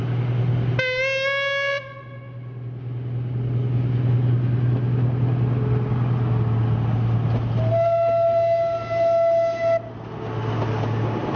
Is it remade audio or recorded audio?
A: recorded